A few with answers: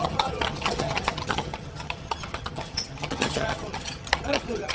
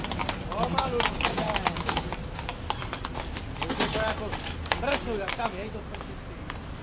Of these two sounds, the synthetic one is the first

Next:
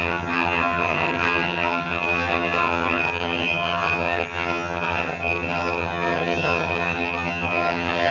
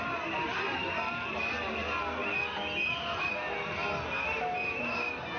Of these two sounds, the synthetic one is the first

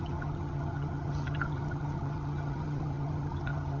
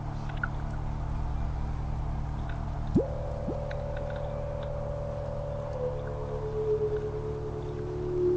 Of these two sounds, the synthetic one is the first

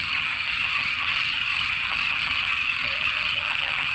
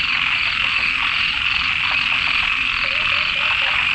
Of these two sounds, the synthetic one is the first